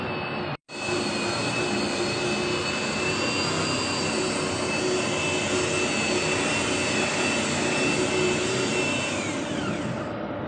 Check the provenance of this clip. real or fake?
real